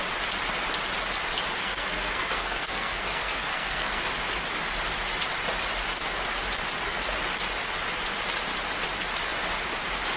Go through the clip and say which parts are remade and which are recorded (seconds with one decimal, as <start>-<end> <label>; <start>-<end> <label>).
0.0-1.6 recorded; 1.6-4.0 remade; 4.0-10.2 recorded